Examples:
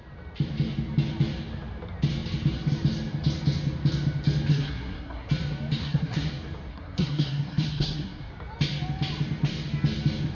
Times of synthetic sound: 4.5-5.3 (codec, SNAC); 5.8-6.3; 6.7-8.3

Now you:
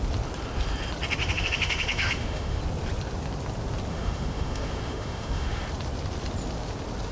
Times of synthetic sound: 1.2-2.6 (autoencoder, DAC-VAE); 3.9-5.6

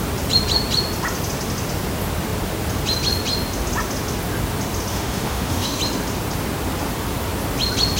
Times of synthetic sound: 4.9-5.8 (autoencoder, DAC-VAE)